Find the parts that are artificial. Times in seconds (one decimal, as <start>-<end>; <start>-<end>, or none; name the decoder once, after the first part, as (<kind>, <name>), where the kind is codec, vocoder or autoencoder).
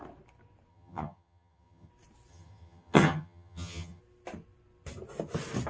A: 0.7-1.9 (vocoder, HiFi-GAN); 2.3-4.0